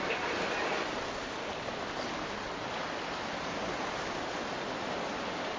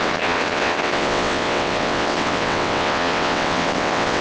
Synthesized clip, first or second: second